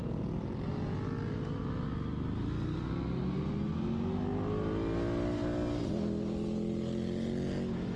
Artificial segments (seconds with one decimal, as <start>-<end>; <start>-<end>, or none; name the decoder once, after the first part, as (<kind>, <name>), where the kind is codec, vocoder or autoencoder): none